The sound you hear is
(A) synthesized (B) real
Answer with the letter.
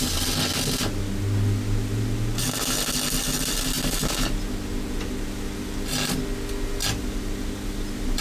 B